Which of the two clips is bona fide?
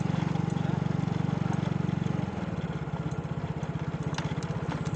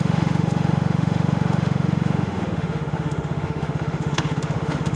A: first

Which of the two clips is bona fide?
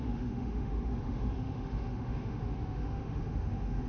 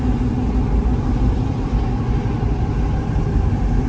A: second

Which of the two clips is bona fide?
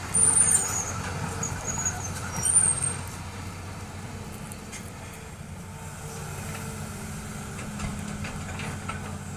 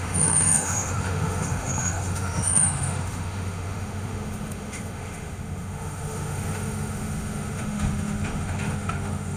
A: first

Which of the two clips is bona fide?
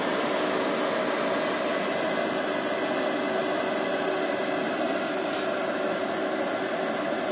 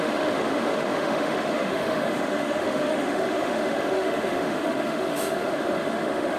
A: first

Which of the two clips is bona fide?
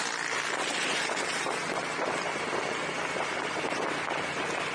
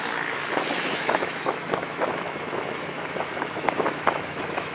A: first